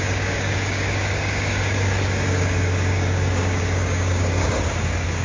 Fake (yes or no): yes